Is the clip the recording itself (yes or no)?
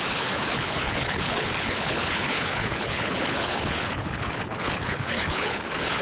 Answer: no